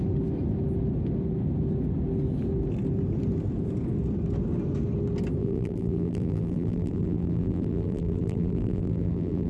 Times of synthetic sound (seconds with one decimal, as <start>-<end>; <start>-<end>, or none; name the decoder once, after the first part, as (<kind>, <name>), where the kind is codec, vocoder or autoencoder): 5.4-9.5 (vocoder, BigVGAN v2)